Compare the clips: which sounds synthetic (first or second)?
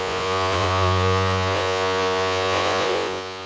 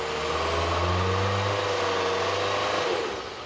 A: first